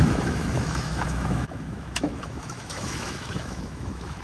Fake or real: fake